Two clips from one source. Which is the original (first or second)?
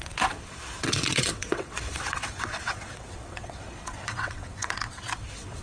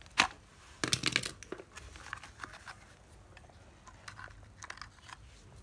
second